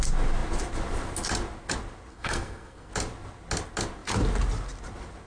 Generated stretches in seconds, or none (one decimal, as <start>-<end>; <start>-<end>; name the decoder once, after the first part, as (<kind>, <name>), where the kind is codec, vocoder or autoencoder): 2.1-2.9 (codec, SNAC)